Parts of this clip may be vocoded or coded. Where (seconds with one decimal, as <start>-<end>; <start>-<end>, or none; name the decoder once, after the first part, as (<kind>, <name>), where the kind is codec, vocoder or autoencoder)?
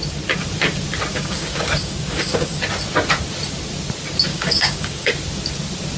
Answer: 1.1-2.6 (codec, DAC); 4.3-5.1